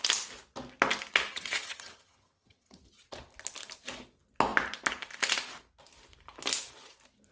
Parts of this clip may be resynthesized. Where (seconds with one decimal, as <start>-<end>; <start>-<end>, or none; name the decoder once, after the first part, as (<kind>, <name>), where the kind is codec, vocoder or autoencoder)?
1.3-2.8 (vocoder, HiFi-GAN)